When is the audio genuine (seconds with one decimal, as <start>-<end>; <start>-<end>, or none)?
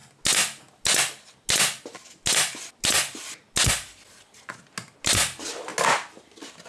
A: 0.0-6.7